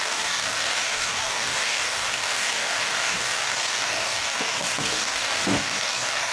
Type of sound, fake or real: fake